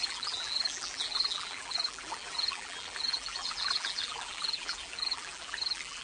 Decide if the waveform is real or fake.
fake